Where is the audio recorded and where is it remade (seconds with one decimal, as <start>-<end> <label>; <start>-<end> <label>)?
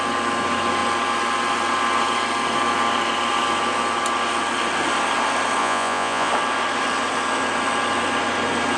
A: 0.0-5.6 recorded; 5.6-6.3 remade; 6.3-8.8 recorded